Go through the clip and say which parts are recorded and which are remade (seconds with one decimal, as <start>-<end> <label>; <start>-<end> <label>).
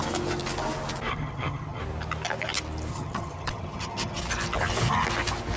0.0-1.1 recorded; 1.1-1.8 remade; 1.8-2.9 recorded; 2.9-4.2 remade; 4.2-5.6 recorded